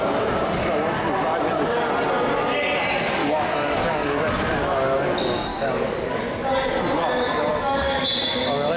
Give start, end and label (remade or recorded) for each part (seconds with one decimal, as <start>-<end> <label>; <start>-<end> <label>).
0.0-3.2 recorded; 3.2-4.3 remade; 4.3-5.5 recorded; 5.5-6.2 remade; 6.2-7.5 recorded; 7.5-8.0 remade; 8.0-8.8 recorded